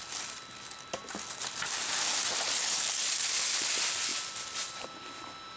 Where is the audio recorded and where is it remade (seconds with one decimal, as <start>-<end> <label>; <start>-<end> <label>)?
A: 0.0-5.6 recorded